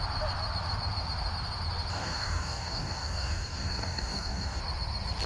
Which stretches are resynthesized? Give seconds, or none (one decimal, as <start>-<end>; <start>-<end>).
1.9-4.6